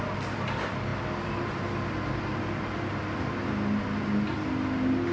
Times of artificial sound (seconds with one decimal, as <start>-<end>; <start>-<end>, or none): none